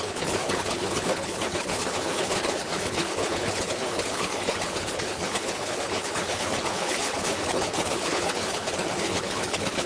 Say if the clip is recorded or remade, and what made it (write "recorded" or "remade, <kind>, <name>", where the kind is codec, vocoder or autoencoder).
remade, codec, HILCodec